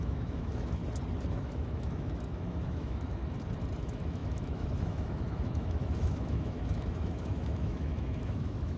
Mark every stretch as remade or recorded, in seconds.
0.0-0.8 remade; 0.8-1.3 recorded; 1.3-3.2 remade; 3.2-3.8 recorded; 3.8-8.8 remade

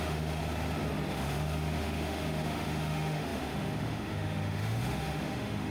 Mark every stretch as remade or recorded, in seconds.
0.0-0.4 remade; 0.4-1.1 recorded; 1.1-5.7 remade

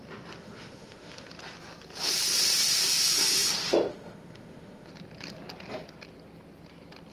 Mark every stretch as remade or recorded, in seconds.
0.0-0.4 recorded; 0.4-1.3 remade; 1.3-3.9 recorded; 3.9-4.9 remade; 4.9-7.1 recorded

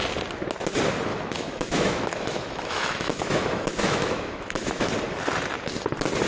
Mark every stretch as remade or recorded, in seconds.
0.0-1.1 recorded; 1.1-4.9 remade; 4.9-6.3 recorded

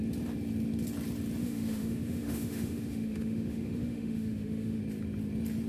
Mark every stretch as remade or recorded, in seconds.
0.0-1.4 recorded; 1.4-4.8 remade; 4.8-5.7 recorded

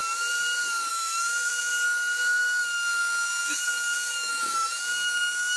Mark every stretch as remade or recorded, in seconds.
0.0-0.9 recorded; 0.9-1.7 remade; 1.7-2.4 recorded; 2.4-5.6 remade

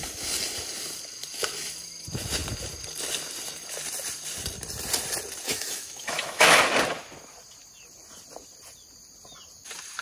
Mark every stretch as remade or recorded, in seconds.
0.0-5.5 recorded; 5.5-6.6 remade; 6.6-10.0 recorded

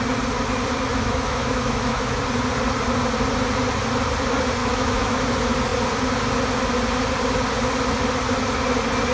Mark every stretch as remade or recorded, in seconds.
0.0-0.9 recorded; 0.9-2.2 remade; 2.2-4.6 recorded; 4.6-5.2 remade; 5.2-9.1 recorded